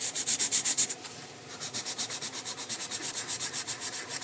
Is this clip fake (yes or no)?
yes